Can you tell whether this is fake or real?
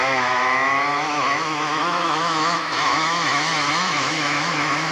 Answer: fake